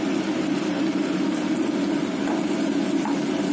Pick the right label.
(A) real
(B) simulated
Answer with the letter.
A